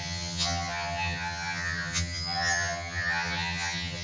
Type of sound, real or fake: fake